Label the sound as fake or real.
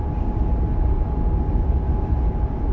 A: real